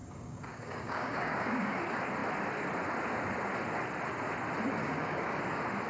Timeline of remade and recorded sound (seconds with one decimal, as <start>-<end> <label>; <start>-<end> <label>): 0.0-1.8 remade; 1.8-4.8 recorded; 4.8-5.4 remade; 5.4-5.9 recorded